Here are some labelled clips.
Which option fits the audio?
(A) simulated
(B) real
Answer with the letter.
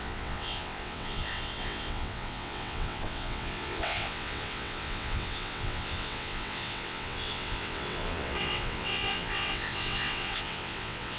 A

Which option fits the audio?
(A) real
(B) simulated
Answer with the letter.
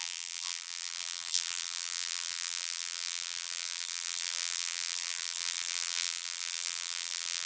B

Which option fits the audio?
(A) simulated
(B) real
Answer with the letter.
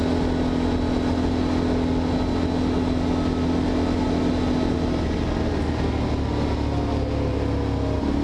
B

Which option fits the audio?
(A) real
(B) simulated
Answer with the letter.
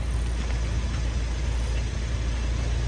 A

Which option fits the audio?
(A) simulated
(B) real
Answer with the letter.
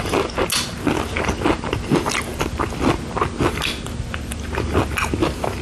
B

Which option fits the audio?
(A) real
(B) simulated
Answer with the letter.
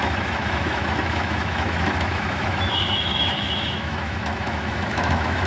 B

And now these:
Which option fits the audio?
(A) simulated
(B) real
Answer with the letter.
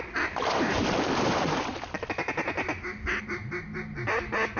B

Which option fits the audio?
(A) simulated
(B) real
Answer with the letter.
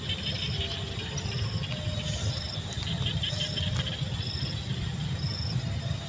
B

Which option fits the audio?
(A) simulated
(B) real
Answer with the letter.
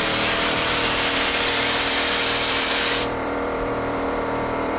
A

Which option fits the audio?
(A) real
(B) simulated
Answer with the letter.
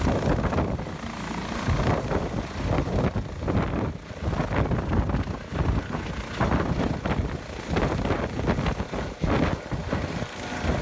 A